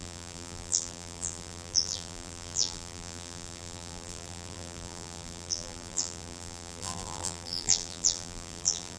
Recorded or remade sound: remade